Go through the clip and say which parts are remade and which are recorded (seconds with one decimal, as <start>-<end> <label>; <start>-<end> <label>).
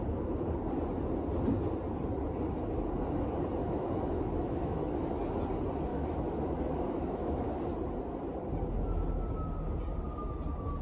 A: 0.0-3.6 recorded; 3.6-4.9 remade; 4.9-5.9 recorded; 5.9-7.5 remade; 7.5-10.8 recorded